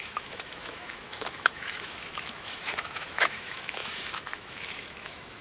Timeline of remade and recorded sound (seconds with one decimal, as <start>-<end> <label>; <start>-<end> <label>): 0.0-5.4 remade